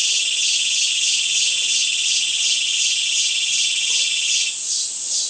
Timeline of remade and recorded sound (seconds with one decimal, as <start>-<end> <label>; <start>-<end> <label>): 0.0-0.9 recorded; 0.9-5.3 remade